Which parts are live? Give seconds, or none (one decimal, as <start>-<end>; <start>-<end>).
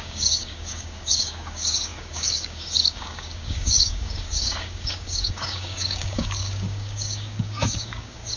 none